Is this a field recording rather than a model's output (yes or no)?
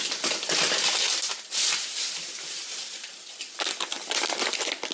yes